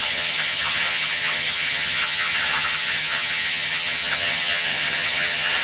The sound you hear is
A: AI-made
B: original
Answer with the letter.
A